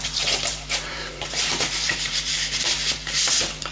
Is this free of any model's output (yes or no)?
no